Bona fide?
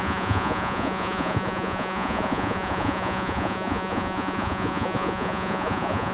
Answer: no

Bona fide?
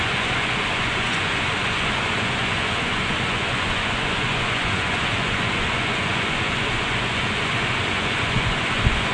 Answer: no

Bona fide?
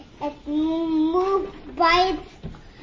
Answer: yes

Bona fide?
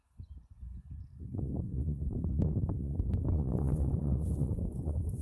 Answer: no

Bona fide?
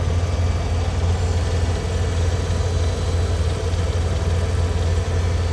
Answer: yes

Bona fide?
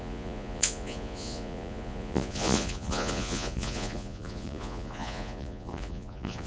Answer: no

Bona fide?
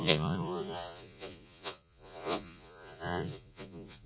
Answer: no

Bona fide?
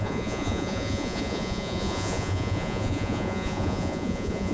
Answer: no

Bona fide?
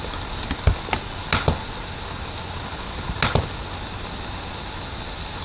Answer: yes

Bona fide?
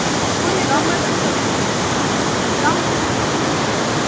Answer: yes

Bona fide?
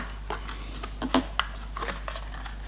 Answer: yes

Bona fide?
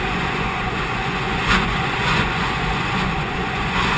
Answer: no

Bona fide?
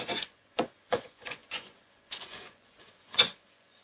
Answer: no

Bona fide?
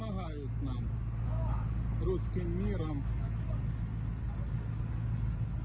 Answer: yes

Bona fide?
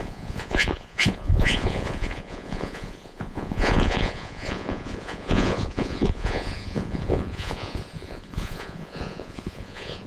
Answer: no